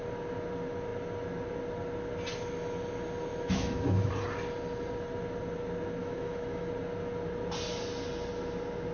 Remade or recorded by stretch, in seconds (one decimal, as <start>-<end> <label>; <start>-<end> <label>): 0.0-3.3 recorded; 3.3-4.1 remade; 4.1-6.0 recorded; 6.0-6.7 remade; 6.7-8.9 recorded

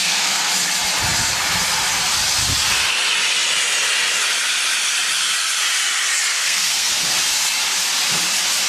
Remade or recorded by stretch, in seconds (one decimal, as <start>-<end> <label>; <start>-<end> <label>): 0.0-0.5 remade; 0.5-6.3 recorded; 6.3-6.9 remade; 6.9-8.7 recorded

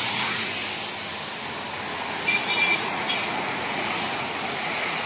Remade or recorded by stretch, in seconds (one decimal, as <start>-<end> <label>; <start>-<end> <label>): 0.0-0.6 remade; 0.6-2.2 recorded; 2.2-5.1 remade

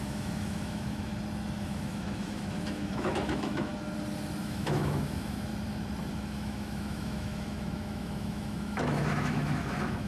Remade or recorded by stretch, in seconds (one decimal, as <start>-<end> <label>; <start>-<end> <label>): 0.0-1.1 remade; 1.1-1.6 recorded; 1.6-3.7 remade; 3.7-4.4 recorded; 4.4-5.5 remade; 5.5-6.1 recorded; 6.1-10.1 remade